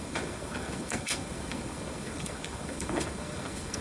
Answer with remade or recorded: remade